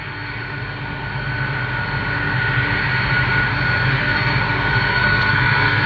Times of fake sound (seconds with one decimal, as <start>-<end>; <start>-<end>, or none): 0.0-0.4; 3.9-4.3; 4.9-5.9